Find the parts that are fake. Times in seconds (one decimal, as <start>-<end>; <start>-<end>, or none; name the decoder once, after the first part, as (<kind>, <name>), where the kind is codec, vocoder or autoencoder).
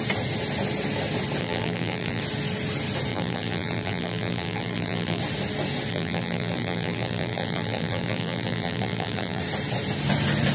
1.4-2.2 (vocoder, BigVGAN v2); 3.1-5.2; 5.9-9.4